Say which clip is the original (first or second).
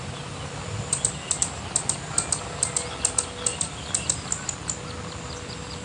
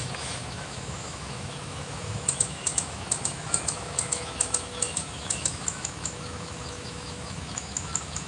first